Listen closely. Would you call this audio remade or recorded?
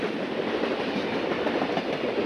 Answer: recorded